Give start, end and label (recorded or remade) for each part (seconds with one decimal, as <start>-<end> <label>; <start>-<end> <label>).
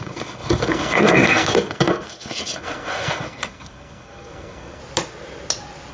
0.0-4.8 remade; 4.8-5.9 recorded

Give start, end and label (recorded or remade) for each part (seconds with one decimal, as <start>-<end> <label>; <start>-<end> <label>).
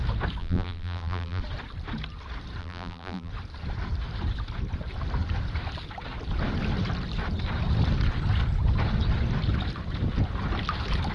0.0-0.4 recorded; 0.4-1.4 remade; 1.4-2.6 recorded; 2.6-3.3 remade; 3.3-11.1 recorded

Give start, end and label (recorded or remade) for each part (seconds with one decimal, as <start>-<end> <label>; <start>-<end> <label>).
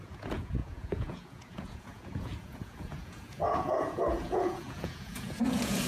0.0-5.9 remade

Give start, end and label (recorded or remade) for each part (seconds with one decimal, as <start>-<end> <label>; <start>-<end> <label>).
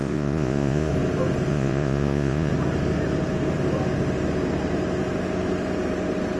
0.0-0.9 remade; 0.9-1.5 recorded; 1.5-2.5 remade; 2.5-6.4 recorded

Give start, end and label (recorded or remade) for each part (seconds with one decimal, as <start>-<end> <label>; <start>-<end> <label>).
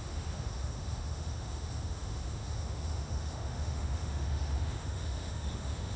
0.0-6.0 remade